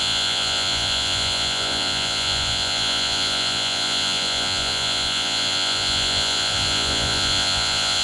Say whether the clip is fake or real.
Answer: fake